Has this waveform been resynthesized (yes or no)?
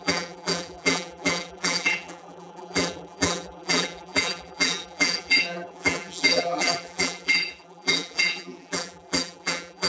yes